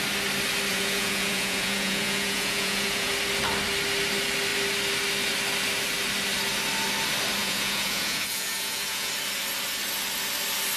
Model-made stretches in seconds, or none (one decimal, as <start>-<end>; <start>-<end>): 0.7-3.1; 7.4-9.1